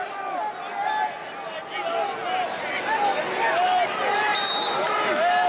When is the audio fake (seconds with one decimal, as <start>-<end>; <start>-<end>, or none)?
none

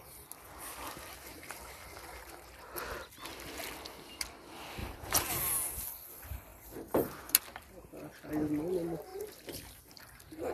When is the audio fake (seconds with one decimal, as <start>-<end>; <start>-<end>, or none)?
4.8-5.3

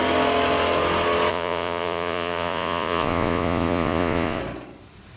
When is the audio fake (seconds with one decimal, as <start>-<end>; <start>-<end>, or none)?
1.3-4.4